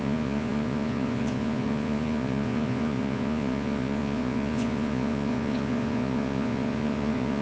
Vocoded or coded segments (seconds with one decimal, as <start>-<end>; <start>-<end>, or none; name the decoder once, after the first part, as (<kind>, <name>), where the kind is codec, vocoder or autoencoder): 0.0-7.4 (vocoder, Vocos)